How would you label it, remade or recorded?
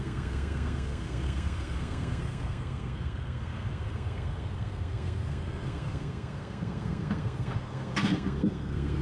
remade